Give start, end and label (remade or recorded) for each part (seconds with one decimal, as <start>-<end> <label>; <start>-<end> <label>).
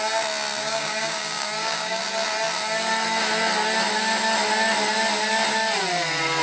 0.0-0.6 recorded; 0.6-2.0 remade; 2.0-6.4 recorded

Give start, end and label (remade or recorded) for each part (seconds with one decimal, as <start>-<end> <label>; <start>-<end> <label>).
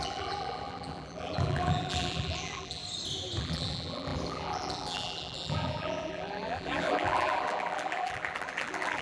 0.0-2.8 remade; 2.8-3.4 recorded; 3.4-9.0 remade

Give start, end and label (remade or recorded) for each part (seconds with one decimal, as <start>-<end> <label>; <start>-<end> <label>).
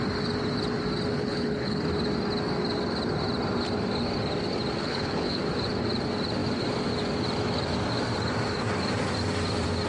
0.0-1.1 recorded; 1.1-1.8 remade; 1.8-4.8 recorded; 4.8-5.4 remade; 5.4-9.9 recorded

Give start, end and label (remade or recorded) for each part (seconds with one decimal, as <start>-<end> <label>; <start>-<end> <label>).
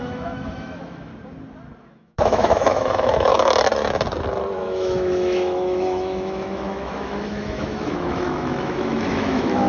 0.0-1.1 remade; 1.1-1.9 recorded; 1.9-3.3 remade; 3.3-4.6 recorded; 4.6-9.7 remade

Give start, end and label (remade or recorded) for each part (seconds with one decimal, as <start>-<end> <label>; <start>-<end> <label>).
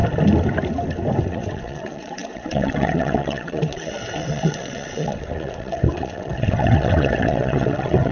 0.0-1.2 recorded; 1.2-8.1 remade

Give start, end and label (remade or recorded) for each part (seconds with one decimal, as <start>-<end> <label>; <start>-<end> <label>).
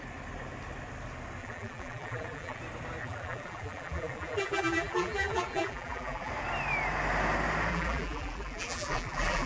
0.0-1.4 recorded; 1.4-2.6 remade; 2.6-3.0 recorded; 3.0-6.3 remade; 6.3-7.7 recorded; 7.7-9.5 remade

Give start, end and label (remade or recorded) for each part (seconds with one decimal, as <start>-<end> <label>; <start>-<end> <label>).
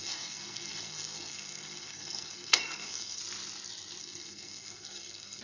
0.0-3.2 remade; 3.2-4.0 recorded; 4.0-5.4 remade